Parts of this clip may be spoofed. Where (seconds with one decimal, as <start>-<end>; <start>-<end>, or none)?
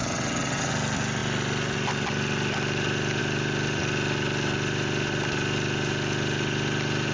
0.0-0.7